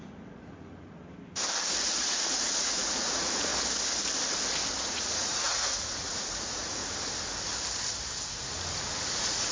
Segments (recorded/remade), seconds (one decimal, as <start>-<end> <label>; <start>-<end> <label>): 0.0-1.0 remade; 1.0-1.9 recorded; 1.9-3.5 remade; 3.5-4.8 recorded; 4.8-6.8 remade; 6.8-8.2 recorded; 8.2-9.5 remade

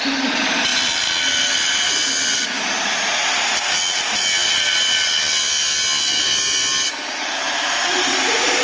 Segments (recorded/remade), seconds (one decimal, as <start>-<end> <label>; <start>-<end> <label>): 0.0-8.6 recorded

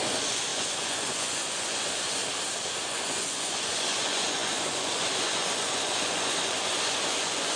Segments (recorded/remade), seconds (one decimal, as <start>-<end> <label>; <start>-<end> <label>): 0.0-2.2 remade; 2.2-2.8 recorded; 2.8-7.6 remade

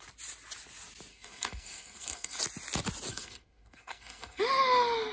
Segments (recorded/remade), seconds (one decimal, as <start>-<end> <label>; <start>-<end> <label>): 0.0-1.1 recorded; 1.1-2.4 remade; 2.4-3.1 recorded; 3.1-4.4 remade; 4.4-5.1 recorded

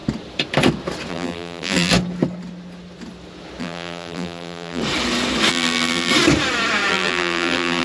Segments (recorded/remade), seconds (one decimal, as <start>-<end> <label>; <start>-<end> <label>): 0.0-1.1 recorded; 1.1-1.9 remade; 1.9-3.6 recorded; 3.6-4.8 remade; 4.8-5.5 recorded; 5.5-6.1 remade; 6.1-6.9 recorded; 6.9-7.8 remade

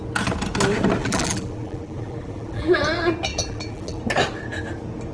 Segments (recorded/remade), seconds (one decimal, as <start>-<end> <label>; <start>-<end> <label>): 0.0-1.0 recorded; 1.0-2.8 remade; 2.8-3.3 recorded; 3.3-4.0 remade; 4.0-5.1 recorded

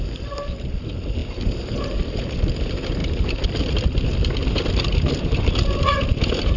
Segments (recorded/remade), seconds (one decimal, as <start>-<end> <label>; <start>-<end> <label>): 0.0-6.6 recorded

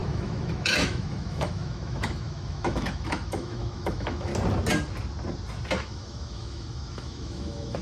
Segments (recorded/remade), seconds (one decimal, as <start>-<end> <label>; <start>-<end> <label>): 0.0-4.3 remade; 4.3-5.8 recorded; 5.8-7.8 remade